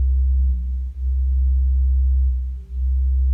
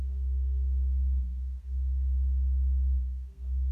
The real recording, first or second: first